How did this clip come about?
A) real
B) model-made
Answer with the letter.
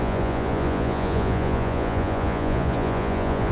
B